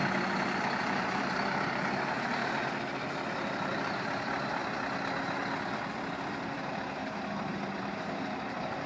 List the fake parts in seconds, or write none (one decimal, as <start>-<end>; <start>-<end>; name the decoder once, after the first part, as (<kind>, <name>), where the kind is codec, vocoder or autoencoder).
0.8-2.4 (vocoder, BigVGAN v2); 3.3-4.6; 6.3-7.0; 7.8-8.9